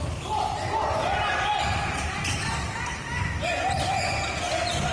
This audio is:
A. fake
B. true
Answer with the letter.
B